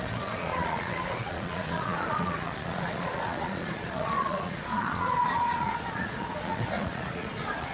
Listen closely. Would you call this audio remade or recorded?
remade